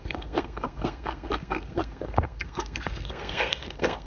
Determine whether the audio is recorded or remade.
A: remade